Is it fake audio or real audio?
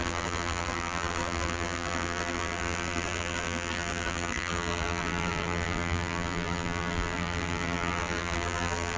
fake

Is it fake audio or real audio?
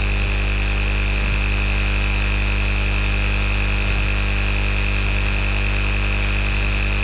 real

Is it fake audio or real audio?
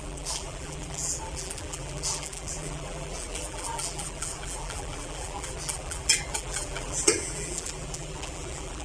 fake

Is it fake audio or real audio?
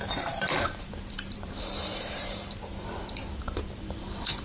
fake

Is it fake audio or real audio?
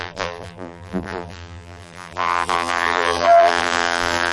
fake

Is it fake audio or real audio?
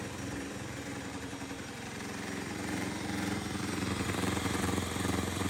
fake